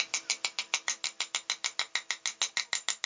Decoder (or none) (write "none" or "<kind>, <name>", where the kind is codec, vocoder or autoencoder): none